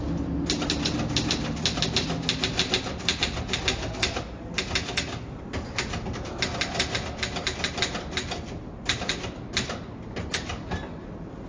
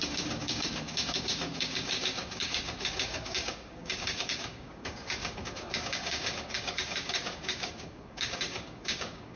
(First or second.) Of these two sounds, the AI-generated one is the second